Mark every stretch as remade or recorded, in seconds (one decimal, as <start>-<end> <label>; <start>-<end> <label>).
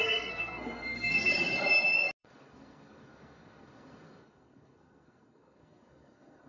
0.0-1.3 remade; 1.3-2.2 recorded; 2.2-6.5 remade